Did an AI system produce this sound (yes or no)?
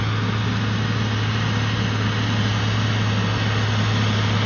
no